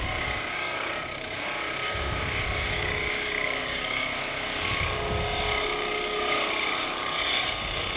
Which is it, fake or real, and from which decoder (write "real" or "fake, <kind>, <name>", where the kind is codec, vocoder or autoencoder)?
fake, codec, DAC